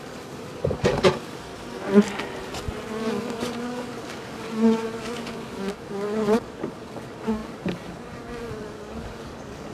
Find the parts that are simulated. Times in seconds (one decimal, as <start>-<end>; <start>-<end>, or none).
0.0-1.5; 3.1-9.7